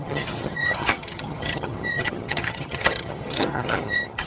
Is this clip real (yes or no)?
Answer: no